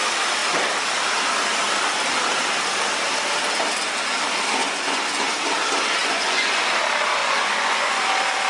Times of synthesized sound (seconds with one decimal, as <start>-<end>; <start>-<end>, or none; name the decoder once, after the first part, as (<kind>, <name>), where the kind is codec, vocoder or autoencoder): 4.6-5.3 (vocoder, Vocos); 6.0-6.7; 7.2-8.0